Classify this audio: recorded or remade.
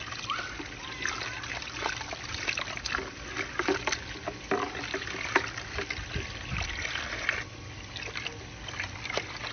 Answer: recorded